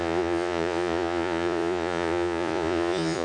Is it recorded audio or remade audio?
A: remade